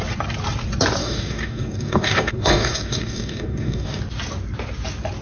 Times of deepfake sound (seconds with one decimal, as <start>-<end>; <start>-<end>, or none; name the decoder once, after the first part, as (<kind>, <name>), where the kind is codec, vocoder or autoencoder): 1.0-4.0 (codec, DAC)